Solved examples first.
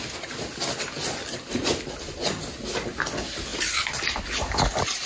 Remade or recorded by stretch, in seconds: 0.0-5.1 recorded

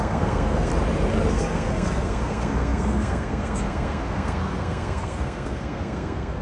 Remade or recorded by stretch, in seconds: 0.0-0.7 remade; 0.7-1.3 recorded; 1.3-6.4 remade

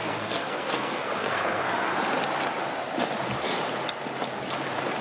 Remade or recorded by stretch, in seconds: 0.0-1.9 remade; 1.9-5.0 recorded

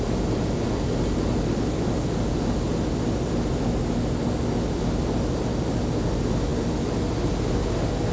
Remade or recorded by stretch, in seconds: 0.0-8.1 recorded